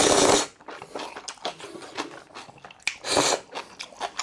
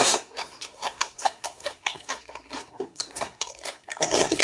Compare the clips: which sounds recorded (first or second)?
first